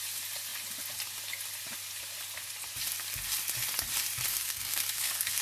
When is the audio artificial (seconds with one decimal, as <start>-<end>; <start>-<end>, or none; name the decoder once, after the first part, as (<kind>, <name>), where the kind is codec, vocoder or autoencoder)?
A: 4.3-5.4 (codec, SNAC)